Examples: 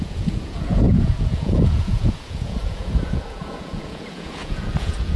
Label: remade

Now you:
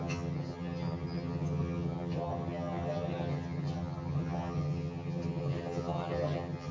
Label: remade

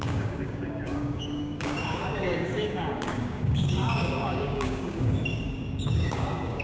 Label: remade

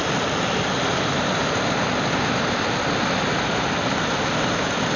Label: recorded